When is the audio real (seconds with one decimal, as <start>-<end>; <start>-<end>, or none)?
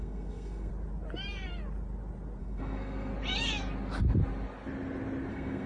0.7-2.4; 3.1-5.3